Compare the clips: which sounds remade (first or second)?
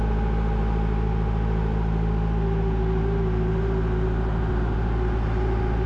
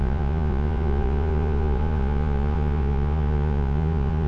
second